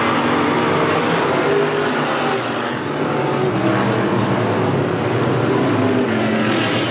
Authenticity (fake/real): real